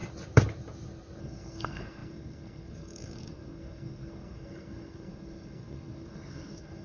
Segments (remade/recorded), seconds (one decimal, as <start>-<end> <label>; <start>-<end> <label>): 0.0-1.2 recorded; 1.2-6.8 remade